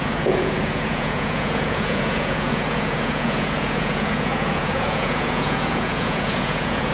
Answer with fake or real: fake